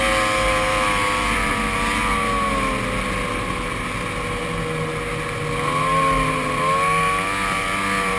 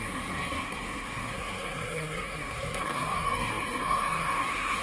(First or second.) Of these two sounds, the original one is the first